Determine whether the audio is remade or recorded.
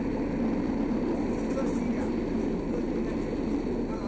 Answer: recorded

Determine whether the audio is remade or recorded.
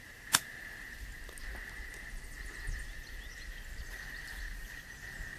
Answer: recorded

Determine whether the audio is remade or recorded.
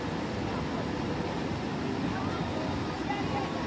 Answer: recorded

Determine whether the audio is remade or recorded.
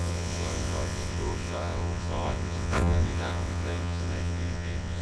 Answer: remade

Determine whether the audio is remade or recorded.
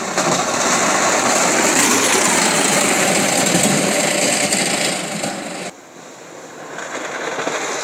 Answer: recorded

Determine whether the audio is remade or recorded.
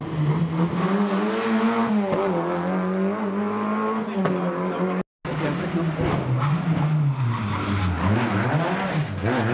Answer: recorded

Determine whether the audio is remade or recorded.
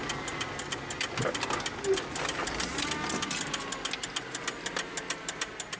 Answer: recorded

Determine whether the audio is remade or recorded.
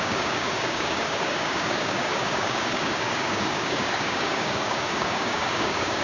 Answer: remade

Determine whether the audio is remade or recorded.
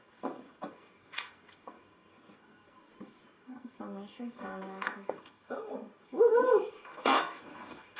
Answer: remade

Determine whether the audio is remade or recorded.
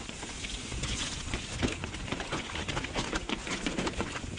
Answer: remade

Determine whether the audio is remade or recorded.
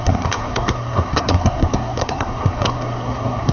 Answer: remade